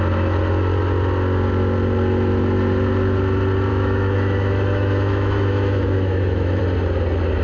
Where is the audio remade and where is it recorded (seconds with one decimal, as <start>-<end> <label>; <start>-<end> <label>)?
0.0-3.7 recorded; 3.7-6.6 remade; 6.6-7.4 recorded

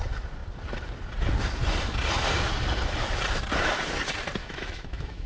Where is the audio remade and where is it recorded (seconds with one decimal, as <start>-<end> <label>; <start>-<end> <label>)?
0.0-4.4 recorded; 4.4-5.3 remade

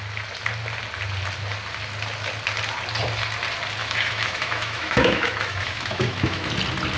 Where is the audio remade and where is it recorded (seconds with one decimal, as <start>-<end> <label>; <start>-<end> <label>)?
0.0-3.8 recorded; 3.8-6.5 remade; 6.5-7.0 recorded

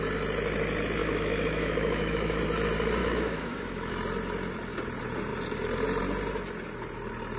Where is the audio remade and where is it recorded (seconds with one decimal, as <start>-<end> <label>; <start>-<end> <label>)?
0.0-1.0 recorded; 1.0-2.4 remade; 2.4-3.0 recorded; 3.0-3.9 remade; 3.9-7.4 recorded